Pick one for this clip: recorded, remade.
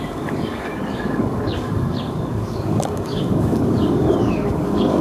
remade